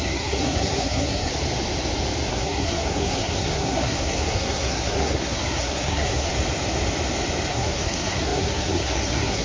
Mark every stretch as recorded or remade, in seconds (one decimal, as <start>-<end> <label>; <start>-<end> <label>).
0.0-1.3 remade; 1.3-2.3 recorded; 2.3-6.3 remade; 6.3-7.5 recorded; 7.5-9.4 remade